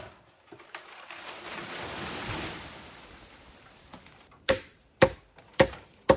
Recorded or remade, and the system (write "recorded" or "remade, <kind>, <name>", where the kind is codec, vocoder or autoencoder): remade, vocoder, BigVGAN v2